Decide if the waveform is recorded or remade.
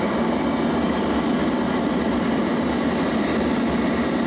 recorded